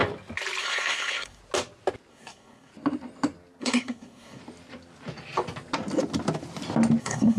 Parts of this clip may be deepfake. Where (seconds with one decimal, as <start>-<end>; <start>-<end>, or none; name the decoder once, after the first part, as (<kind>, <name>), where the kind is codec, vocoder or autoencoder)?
0.6-1.4 (codec, SNAC); 2.1-2.7; 3.6-4.4; 7.0-7.4